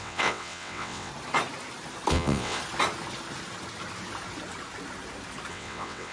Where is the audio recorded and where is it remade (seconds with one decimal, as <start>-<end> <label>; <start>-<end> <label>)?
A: 0.0-1.1 remade; 1.1-2.1 recorded; 2.1-2.6 remade; 2.6-5.5 recorded; 5.5-6.1 remade